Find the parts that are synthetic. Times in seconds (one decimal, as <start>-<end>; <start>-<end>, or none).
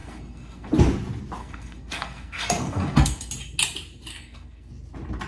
0.0-0.7; 1.4-3.3; 4.1-4.7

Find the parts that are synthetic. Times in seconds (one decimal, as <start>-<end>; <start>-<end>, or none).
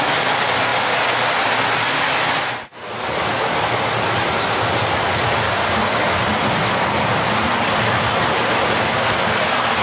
none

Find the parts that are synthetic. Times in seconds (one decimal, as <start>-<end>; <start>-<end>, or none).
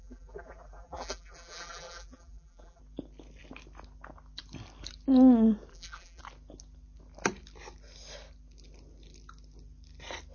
0.0-2.8; 5.7-6.2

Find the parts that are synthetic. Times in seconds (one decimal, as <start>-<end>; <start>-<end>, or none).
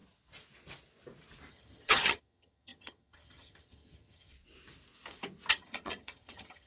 1.5-4.3; 5.5-6.7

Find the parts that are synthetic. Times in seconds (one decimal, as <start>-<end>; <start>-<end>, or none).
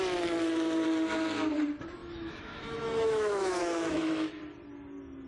2.0-4.4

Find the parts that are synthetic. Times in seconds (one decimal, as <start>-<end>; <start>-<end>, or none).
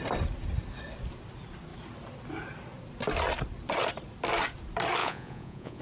5.0-5.8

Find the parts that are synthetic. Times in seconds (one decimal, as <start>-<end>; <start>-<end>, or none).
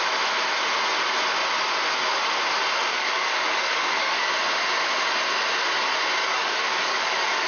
2.9-4.3; 6.2-7.5